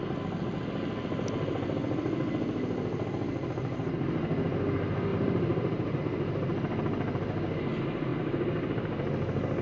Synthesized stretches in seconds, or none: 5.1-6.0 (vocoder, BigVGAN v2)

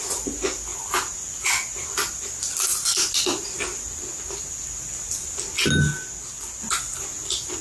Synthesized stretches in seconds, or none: none